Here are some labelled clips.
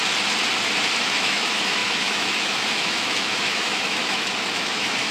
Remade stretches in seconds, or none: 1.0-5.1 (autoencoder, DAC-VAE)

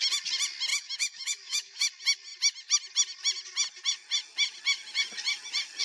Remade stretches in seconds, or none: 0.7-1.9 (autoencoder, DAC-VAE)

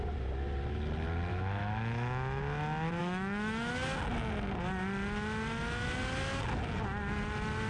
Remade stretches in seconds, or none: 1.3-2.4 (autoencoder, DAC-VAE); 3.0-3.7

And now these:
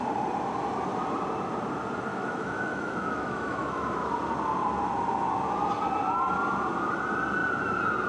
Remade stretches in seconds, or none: 2.1-4.1 (autoencoder, DAC-VAE)

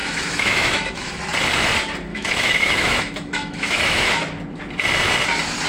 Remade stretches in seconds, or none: 0.0-1.2 (autoencoder, DAC-VAE); 2.1-4.1

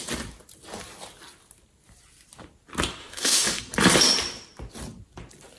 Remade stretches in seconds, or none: 3.0-3.6 (autoencoder, DAC-VAE)

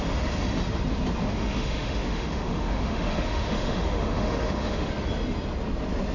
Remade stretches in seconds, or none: 1.2-4.9 (autoencoder, DAC-VAE)